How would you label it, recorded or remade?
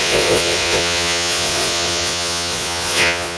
remade